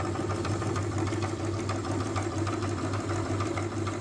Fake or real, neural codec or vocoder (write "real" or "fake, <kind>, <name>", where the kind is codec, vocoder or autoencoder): real